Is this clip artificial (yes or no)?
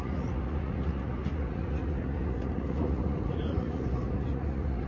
yes